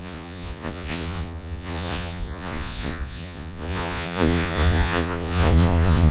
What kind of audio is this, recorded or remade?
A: remade